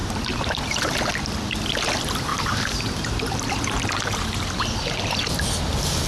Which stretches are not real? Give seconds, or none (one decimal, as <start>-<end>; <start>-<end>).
0.0-1.0; 2.3-5.3